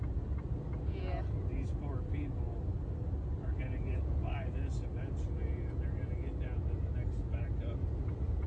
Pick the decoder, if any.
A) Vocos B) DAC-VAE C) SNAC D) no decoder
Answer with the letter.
D